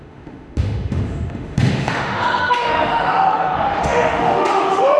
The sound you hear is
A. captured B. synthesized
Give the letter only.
B